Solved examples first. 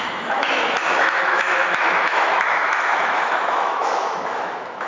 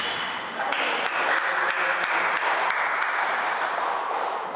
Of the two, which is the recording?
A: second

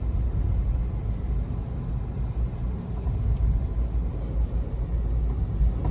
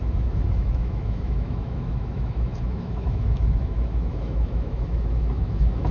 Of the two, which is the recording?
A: first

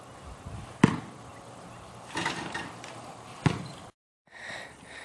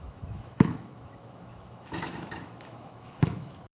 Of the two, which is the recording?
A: first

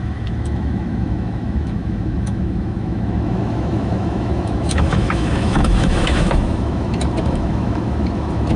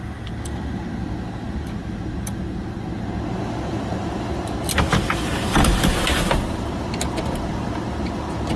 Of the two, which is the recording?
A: second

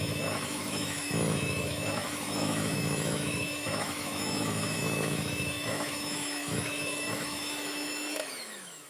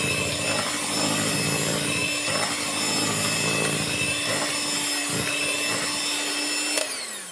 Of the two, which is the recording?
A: second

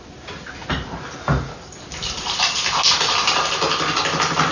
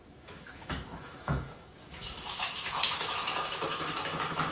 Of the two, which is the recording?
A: first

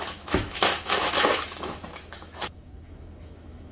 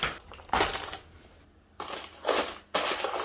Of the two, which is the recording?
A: second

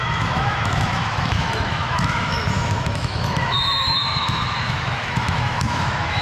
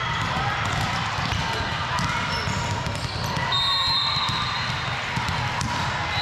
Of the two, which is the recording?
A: second